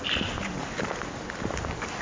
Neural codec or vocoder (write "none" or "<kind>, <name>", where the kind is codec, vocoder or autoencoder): none